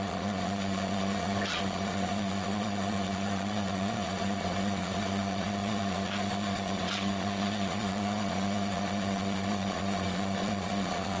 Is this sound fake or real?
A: fake